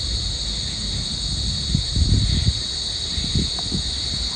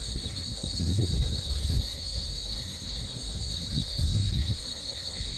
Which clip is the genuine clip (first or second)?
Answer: first